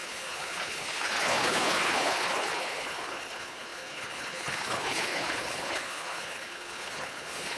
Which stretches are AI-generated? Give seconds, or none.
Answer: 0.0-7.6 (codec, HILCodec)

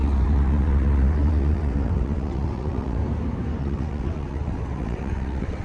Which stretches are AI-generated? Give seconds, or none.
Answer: 0.0-3.0 (vocoder, WaveNeXt); 3.6-5.6

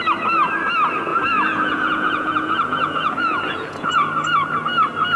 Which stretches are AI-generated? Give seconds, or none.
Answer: 1.1-3.9 (vocoder, Vocos)

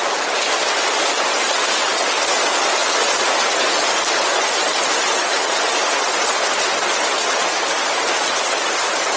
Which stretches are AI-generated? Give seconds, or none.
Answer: none

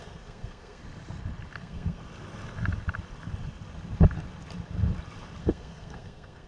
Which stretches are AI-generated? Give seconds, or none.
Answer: 0.0-0.8 (codec, SNAC); 1.6-2.0; 5.4-6.5

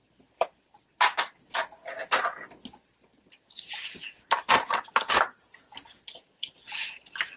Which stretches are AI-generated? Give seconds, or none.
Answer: none